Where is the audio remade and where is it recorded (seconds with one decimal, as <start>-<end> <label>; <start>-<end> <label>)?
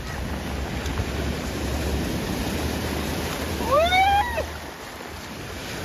0.0-0.9 recorded; 0.9-4.4 remade; 4.4-5.8 recorded